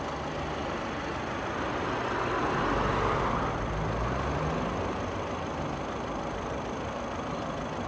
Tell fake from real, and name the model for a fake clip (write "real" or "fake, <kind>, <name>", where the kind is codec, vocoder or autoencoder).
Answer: real